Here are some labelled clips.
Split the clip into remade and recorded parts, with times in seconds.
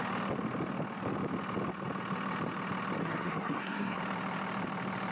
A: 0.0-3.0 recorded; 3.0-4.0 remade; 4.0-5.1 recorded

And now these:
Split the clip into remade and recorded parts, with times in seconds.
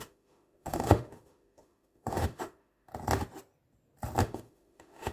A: 0.0-2.9 remade; 2.9-4.2 recorded; 4.2-5.1 remade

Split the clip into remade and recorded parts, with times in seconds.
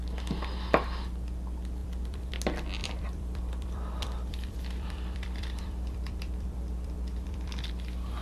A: 0.0-1.8 recorded; 1.8-2.3 remade; 2.3-2.8 recorded; 2.8-7.7 remade; 7.7-8.2 recorded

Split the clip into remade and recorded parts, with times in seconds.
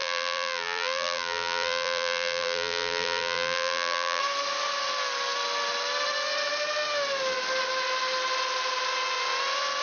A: 0.0-4.2 remade; 4.2-9.8 recorded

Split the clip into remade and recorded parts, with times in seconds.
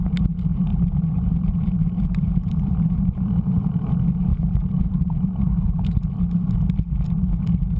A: 0.0-0.7 recorded; 0.7-3.7 remade; 3.7-4.3 recorded; 4.3-6.5 remade; 6.5-7.8 recorded